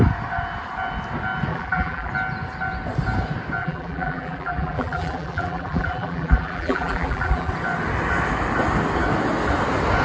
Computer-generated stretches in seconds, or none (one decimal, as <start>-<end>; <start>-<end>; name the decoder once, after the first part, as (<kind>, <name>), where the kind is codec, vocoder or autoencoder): 1.5-2.1 (vocoder, BigVGAN v2); 3.6-7.5